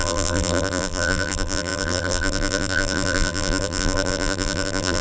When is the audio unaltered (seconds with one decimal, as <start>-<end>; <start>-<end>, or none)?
none